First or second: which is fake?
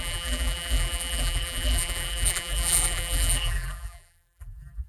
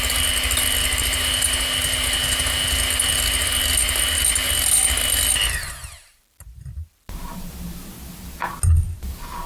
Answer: first